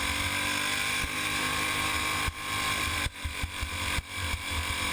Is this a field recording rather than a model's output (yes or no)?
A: yes